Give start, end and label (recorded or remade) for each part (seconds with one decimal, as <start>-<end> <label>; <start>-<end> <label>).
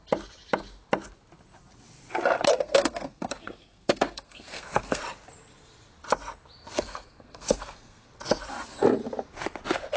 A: 0.0-2.5 recorded; 2.5-5.0 remade; 5.0-6.7 recorded; 6.7-8.1 remade; 8.1-10.0 recorded